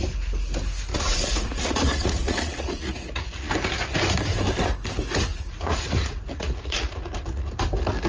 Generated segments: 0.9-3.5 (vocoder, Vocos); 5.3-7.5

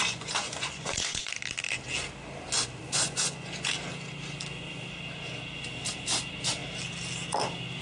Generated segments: 0.0-1.3 (vocoder, Vocos); 2.8-3.7

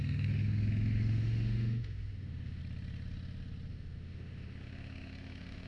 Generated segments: 0.0-2.6 (autoencoder, DAC-VAE); 3.7-5.7

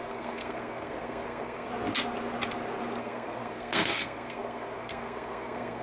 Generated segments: 0.0-1.7 (codec, SNAC); 3.0-5.8

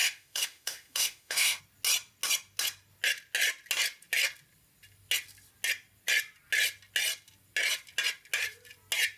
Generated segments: 0.0-1.6 (autoencoder, DAC-VAE)